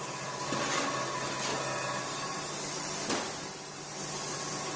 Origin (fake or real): real